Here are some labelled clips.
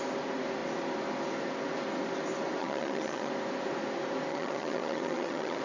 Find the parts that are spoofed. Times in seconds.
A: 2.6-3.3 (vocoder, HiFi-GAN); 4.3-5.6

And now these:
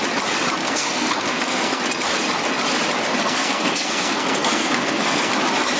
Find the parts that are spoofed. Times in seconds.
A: 0.6-1.8 (codec, SNAC); 3.2-5.3

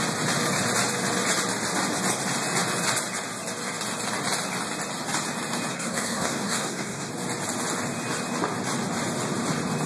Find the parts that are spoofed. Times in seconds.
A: 5.7-7.1 (codec, SNAC)

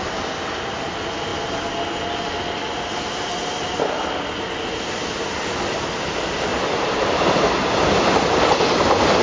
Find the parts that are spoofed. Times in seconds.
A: 6.5-8.3 (vocoder, BigVGAN v2)

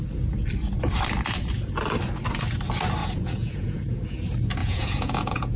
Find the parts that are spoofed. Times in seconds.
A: 3.0-4.0 (vocoder, Vocos); 4.6-5.6

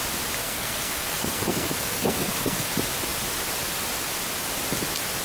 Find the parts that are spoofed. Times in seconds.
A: 0.4-2.7 (codec, SNAC)

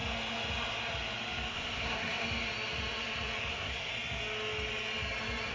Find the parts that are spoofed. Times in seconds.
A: 1.5-2.2 (codec, SNAC); 3.5-3.9